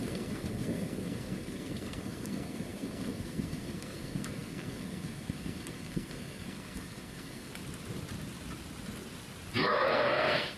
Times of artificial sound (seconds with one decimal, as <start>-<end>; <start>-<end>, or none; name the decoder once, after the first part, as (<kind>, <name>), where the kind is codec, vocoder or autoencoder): 0.0-7.5 (codec, SNAC); 9.9-10.6